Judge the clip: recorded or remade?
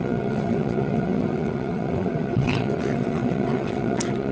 remade